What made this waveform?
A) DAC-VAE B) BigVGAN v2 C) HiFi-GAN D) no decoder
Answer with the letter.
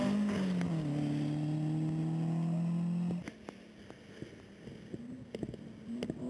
D